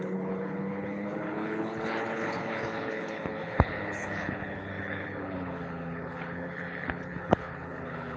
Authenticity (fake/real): fake